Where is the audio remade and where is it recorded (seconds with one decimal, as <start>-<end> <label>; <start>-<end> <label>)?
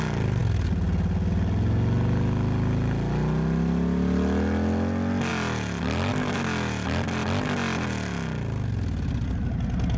0.0-10.0 recorded